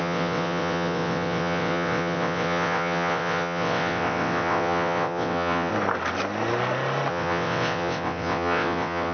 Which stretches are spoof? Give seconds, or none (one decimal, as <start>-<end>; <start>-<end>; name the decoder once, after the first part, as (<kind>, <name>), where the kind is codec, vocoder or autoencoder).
0.0-5.7 (vocoder, WaveNeXt); 7.1-9.1